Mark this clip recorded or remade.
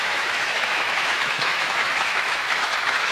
remade